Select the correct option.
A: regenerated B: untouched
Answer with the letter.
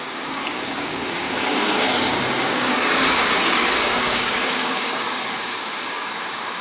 A